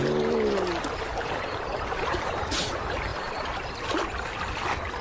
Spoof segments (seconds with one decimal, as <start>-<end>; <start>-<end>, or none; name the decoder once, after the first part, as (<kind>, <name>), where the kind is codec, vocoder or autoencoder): 1.1-2.7 (vocoder, BigVGAN v2); 3.1-3.6